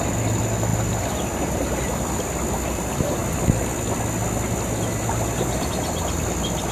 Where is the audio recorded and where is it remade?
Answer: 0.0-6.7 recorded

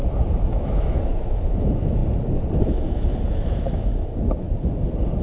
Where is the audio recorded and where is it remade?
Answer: 0.0-0.5 recorded; 0.5-2.0 remade; 2.0-3.3 recorded; 3.3-3.9 remade; 3.9-5.2 recorded

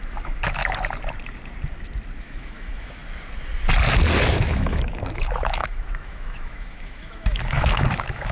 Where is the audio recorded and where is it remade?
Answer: 0.0-0.6 remade; 0.6-2.2 recorded; 2.2-3.0 remade; 3.0-4.3 recorded; 4.3-8.3 remade

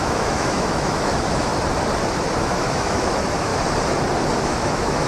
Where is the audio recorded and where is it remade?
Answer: 0.0-1.5 remade; 1.5-2.4 recorded; 2.4-3.5 remade; 3.5-4.4 recorded; 4.4-5.1 remade

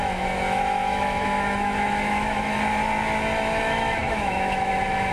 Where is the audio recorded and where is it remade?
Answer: 0.0-2.5 remade; 2.5-3.6 recorded; 3.6-5.1 remade

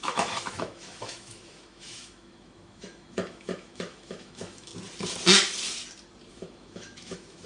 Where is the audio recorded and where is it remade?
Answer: 0.0-4.7 remade; 4.7-6.3 recorded; 6.3-7.5 remade

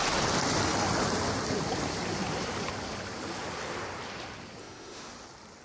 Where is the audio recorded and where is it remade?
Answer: 0.0-4.6 recorded; 4.6-5.1 remade; 5.1-5.6 recorded